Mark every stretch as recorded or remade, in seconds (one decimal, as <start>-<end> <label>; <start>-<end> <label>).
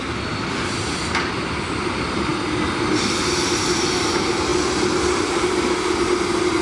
0.0-6.6 recorded